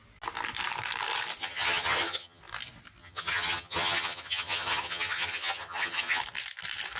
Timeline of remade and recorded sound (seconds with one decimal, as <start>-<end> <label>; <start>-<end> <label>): 0.0-1.4 recorded; 1.4-2.4 remade; 2.4-3.0 recorded; 3.0-6.2 remade; 6.2-7.0 recorded